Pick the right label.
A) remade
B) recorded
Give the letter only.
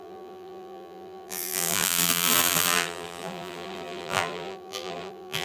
A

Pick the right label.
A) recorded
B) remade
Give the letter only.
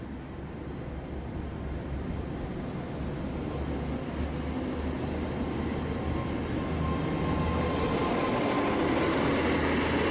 A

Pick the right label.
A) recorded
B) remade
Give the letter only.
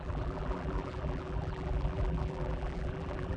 B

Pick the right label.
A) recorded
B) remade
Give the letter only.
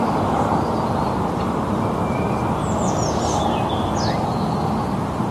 B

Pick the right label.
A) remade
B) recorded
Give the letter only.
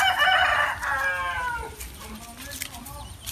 B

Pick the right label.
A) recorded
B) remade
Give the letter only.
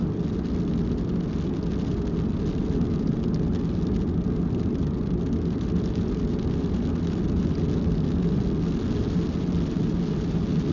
A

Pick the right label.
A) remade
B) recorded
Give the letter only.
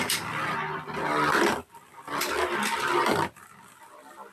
A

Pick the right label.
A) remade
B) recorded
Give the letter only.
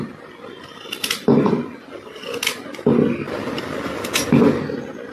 B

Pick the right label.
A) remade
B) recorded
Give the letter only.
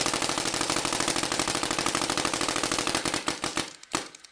A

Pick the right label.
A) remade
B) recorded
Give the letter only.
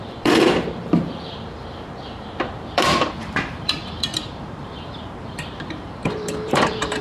A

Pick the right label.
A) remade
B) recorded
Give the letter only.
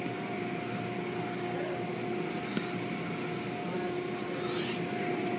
B